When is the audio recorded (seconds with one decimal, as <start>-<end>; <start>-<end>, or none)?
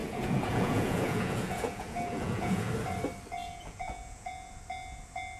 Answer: 2.7-3.4; 4.3-5.4